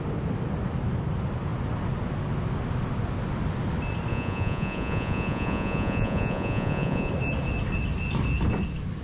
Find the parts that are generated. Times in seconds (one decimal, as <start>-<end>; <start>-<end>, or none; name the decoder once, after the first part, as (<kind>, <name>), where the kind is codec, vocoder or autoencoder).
4.1-7.1 (vocoder, Vocos)